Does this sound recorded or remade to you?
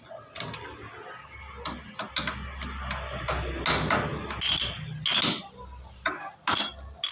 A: recorded